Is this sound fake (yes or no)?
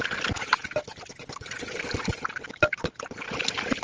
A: no